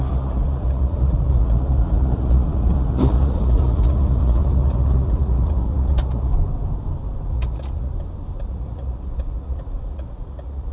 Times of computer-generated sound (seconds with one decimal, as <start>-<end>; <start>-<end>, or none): 0.0-6.3; 7.3-7.9; 8.5-10.7